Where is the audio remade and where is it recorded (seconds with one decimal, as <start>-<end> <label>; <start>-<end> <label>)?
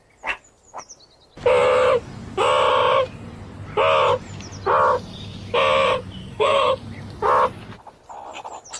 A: 0.0-6.2 recorded; 6.2-6.7 remade; 6.7-8.8 recorded